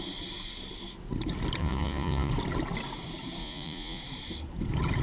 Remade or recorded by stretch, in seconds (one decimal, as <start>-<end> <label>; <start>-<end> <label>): 0.0-1.6 recorded; 1.6-2.3 remade; 2.3-3.4 recorded; 3.4-4.0 remade; 4.0-5.0 recorded